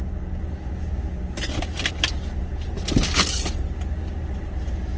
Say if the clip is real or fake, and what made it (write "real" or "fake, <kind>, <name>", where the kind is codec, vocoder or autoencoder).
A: real